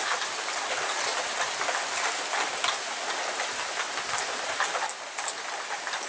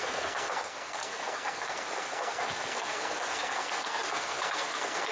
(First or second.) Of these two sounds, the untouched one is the first